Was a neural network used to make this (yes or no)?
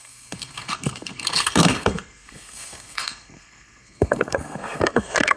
yes